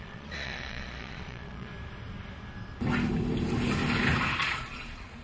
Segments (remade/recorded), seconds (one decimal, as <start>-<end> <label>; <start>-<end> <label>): 0.0-1.7 remade; 1.7-4.4 recorded; 4.4-5.2 remade